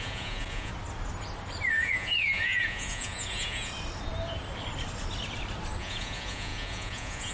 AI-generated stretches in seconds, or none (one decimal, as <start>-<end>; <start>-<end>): 0.0-0.7; 1.7-3.7; 5.8-7.3